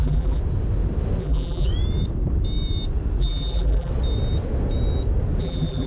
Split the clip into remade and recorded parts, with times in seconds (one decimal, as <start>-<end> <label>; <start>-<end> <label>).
0.0-0.4 remade; 0.4-1.2 recorded; 1.2-1.7 remade; 1.7-3.2 recorded; 3.2-3.9 remade; 3.9-5.4 recorded; 5.4-5.9 remade